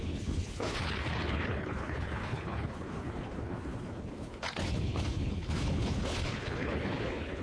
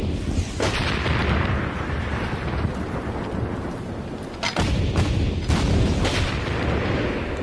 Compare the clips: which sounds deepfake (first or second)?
first